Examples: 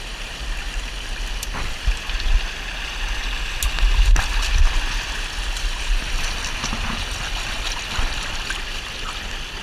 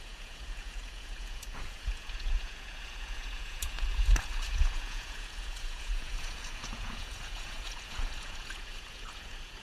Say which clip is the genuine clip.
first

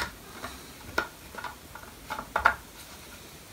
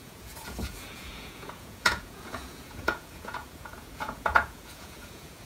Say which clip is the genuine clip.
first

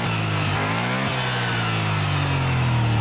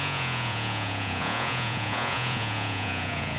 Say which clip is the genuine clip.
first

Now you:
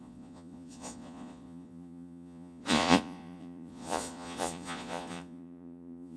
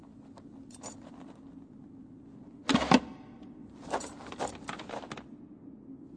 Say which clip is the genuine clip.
second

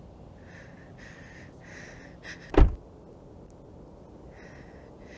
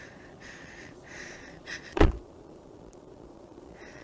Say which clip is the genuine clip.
first